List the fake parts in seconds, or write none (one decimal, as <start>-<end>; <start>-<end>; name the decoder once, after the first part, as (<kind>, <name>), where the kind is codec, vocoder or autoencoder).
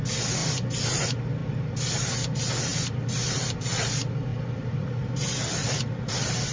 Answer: 0.4-1.0 (vocoder, BigVGAN v2); 2.7-3.9; 4.3-6.1